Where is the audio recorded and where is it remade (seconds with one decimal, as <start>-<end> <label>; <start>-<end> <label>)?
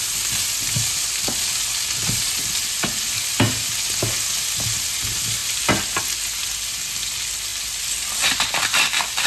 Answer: 0.0-9.3 recorded